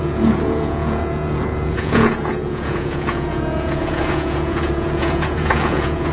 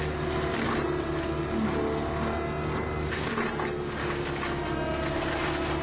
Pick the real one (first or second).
second